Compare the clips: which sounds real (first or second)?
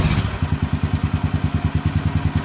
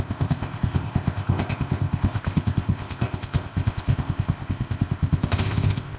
first